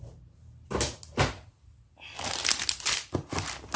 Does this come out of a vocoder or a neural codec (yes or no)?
no